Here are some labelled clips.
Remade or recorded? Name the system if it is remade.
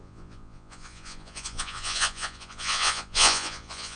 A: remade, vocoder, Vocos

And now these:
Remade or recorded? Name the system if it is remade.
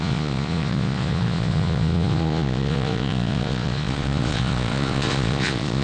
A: remade, vocoder, Vocos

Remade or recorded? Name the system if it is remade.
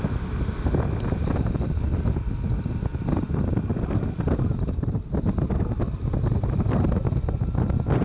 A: recorded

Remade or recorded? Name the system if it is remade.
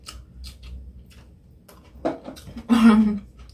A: recorded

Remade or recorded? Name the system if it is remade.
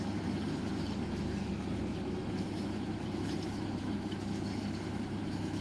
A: remade, autoencoder, DAC-VAE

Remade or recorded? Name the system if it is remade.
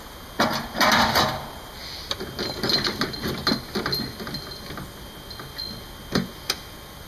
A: recorded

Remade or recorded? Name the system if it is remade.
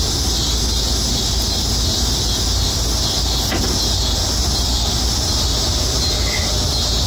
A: recorded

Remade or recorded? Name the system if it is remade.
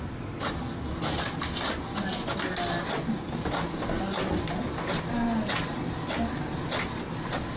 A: recorded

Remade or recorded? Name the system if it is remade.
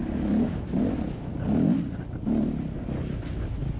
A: recorded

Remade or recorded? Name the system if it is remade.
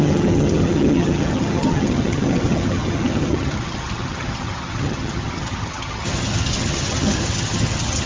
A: remade, vocoder, HiFi-GAN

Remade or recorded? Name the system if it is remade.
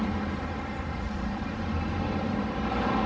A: remade, vocoder, BigVGAN v2